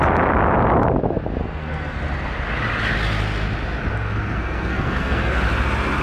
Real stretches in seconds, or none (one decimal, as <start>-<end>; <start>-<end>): 0.0-1.4; 2.0-3.9; 5.4-6.0